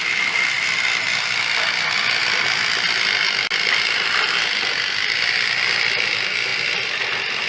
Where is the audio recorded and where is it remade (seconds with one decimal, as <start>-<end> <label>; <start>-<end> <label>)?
0.0-7.5 recorded